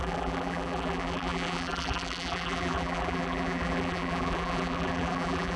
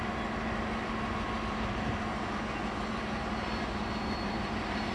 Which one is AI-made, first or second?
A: first